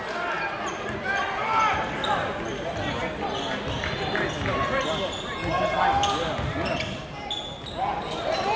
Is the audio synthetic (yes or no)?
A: no